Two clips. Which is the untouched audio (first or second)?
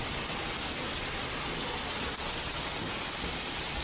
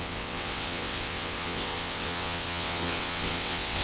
first